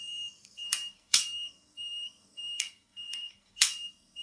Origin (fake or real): fake